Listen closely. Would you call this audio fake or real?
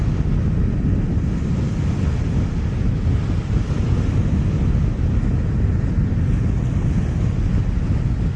real